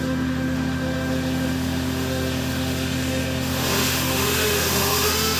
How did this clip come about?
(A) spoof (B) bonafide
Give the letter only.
A